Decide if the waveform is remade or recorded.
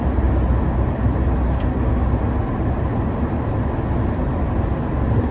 recorded